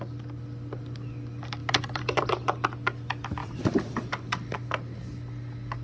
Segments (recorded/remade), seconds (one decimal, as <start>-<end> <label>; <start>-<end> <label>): 0.0-1.6 recorded; 1.6-2.3 remade; 2.3-3.4 recorded; 3.4-4.1 remade; 4.1-5.8 recorded